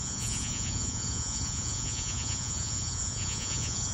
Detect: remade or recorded remade